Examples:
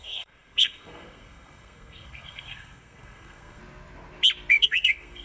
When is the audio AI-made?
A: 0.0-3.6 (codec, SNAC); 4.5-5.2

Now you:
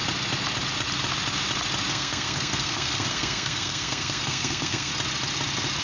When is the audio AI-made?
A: 1.9-4.9 (codec, SNAC)